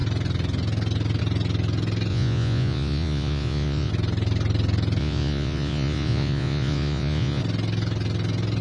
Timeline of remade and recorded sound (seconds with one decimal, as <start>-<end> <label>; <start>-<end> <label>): 0.0-2.1 recorded; 2.1-3.9 remade; 3.9-5.0 recorded; 5.0-7.4 remade; 7.4-8.6 recorded